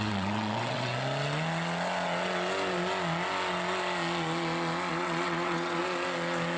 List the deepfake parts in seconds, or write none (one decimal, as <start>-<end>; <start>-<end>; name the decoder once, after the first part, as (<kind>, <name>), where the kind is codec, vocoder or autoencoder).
0.0-0.9 (vocoder, WaveNeXt); 4.9-5.8